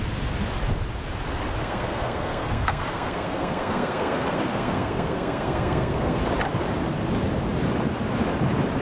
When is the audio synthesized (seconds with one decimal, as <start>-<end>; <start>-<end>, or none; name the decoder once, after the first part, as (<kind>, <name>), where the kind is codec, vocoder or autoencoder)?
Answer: 1.6-6.2 (codec, SNAC)